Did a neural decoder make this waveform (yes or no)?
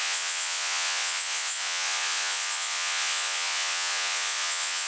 yes